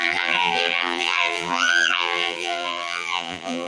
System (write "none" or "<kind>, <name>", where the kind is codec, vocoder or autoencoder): vocoder, BigVGAN v2